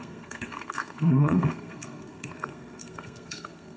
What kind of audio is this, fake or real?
fake